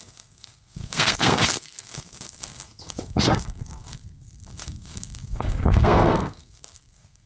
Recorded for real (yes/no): no